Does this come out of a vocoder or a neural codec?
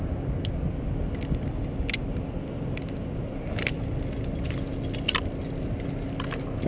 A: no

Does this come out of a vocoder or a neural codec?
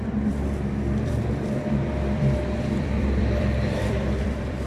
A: yes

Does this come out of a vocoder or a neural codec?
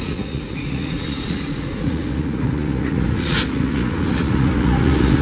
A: yes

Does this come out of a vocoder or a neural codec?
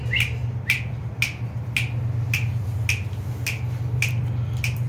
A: no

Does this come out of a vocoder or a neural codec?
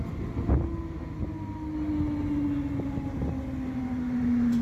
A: no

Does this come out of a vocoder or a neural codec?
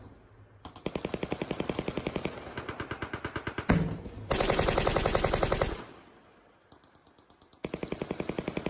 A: no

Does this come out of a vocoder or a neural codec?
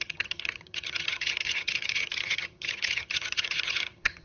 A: yes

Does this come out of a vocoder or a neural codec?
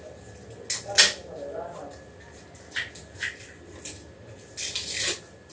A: no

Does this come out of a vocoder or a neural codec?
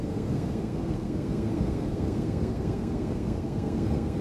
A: yes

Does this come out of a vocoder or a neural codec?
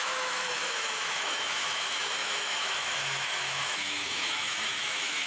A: yes